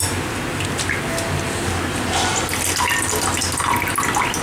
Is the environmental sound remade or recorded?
recorded